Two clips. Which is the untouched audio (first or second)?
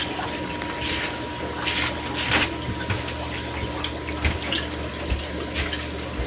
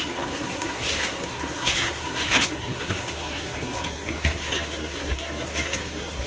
first